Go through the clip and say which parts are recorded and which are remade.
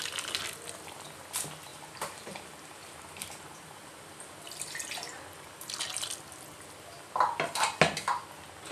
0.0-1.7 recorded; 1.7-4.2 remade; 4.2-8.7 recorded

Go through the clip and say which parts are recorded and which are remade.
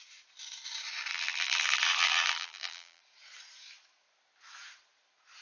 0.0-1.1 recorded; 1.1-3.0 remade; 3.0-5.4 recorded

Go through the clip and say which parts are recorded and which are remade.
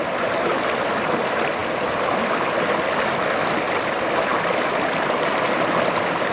0.0-4.3 recorded; 4.3-6.3 remade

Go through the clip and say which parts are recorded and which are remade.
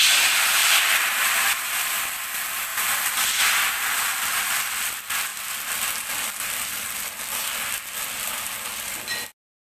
0.0-0.6 recorded; 0.6-1.3 remade; 1.3-9.6 recorded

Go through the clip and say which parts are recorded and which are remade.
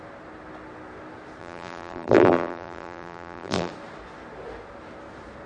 0.0-1.4 recorded; 1.4-3.7 remade; 3.7-5.5 recorded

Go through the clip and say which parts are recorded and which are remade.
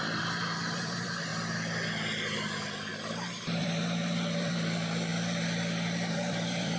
0.0-1.3 remade; 1.3-1.9 recorded; 1.9-5.1 remade; 5.1-6.1 recorded; 6.1-6.8 remade